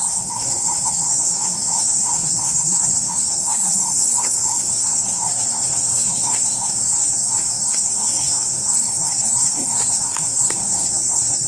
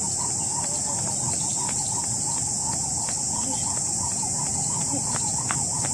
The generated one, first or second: first